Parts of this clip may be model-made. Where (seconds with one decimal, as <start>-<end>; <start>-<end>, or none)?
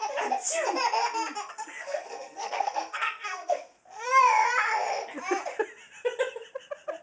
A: 1.5-4.2